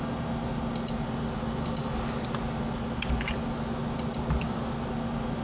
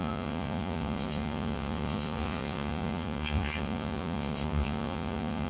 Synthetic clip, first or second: second